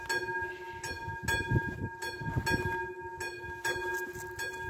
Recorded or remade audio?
recorded